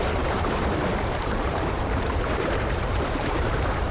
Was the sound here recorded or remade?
remade